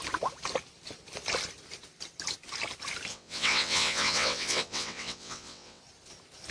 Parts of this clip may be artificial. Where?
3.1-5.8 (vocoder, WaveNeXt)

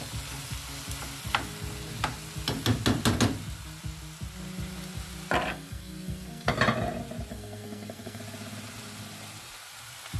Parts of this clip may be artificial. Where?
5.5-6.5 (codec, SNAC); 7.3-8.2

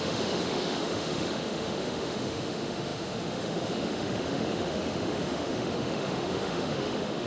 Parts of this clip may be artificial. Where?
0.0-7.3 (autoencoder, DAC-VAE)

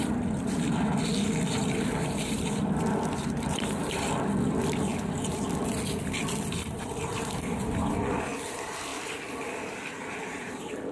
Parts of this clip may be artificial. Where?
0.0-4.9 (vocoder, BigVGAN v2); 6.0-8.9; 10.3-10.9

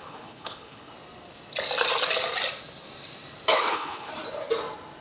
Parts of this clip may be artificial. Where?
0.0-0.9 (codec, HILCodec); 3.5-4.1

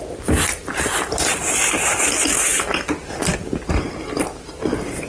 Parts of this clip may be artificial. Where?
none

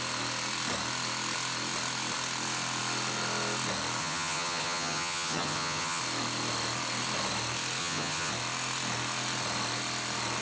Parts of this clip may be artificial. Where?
4.0-6.0 (vocoder, HiFi-GAN); 7.8-8.3